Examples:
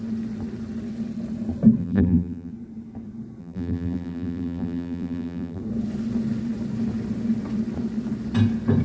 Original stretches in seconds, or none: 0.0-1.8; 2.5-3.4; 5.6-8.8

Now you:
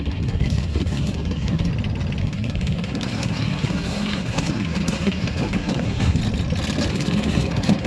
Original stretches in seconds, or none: 1.7-2.2; 6.2-6.9

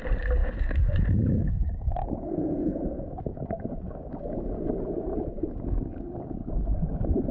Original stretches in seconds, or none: 0.0-0.4; 4.8-5.3; 6.6-7.3

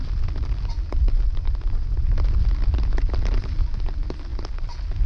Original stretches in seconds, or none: 0.0-5.1

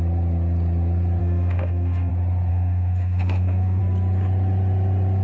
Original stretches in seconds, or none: 0.0-1.2; 2.1-2.5; 3.8-5.2